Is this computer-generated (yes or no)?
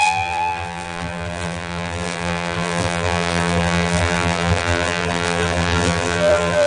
yes